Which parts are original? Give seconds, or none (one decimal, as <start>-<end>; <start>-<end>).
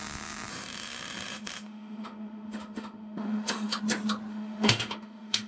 0.0-0.5; 3.8-4.3